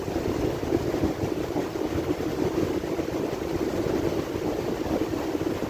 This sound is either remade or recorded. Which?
recorded